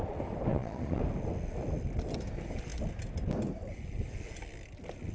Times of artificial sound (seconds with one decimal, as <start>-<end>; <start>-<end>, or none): 0.5-1.0